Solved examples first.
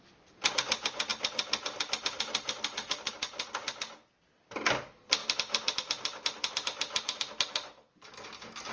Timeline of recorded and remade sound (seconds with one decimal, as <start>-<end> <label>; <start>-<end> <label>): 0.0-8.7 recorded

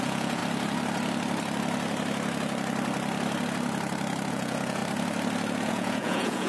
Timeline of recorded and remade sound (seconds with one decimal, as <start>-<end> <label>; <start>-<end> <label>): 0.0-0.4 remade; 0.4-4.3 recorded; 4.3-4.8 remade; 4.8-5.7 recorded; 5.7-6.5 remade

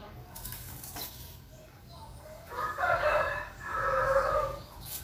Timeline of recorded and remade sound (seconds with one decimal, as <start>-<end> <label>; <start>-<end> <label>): 0.0-5.0 remade

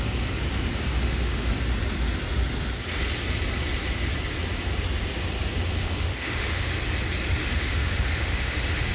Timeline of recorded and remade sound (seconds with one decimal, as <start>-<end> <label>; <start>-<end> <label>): 0.0-1.0 recorded; 1.0-1.5 remade; 1.5-5.7 recorded; 5.7-6.7 remade; 6.7-7.4 recorded; 7.4-8.9 remade

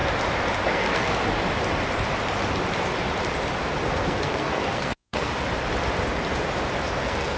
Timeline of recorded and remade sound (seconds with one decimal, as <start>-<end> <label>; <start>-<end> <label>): 0.0-0.7 recorded; 0.7-1.2 remade; 1.2-3.9 recorded; 3.9-5.3 remade; 5.3-7.0 recorded; 7.0-7.4 remade

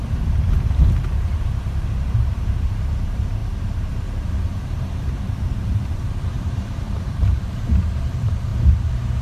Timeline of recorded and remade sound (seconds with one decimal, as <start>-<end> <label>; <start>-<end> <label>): 0.0-9.2 remade

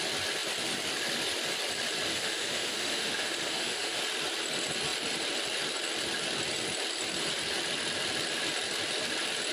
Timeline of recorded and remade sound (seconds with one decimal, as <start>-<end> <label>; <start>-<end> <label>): 0.0-2.1 recorded; 2.1-4.0 remade; 4.0-9.5 recorded

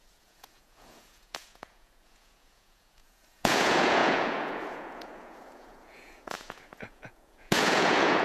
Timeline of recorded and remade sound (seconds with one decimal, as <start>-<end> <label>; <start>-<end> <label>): 0.0-8.2 remade